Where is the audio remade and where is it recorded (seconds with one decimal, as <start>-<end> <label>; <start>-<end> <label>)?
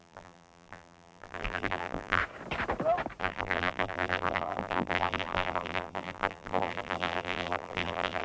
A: 0.0-2.2 remade; 2.2-3.2 recorded; 3.2-8.2 remade